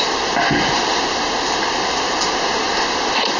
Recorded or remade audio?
recorded